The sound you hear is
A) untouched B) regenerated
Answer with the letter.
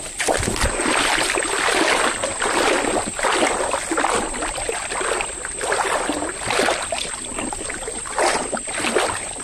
A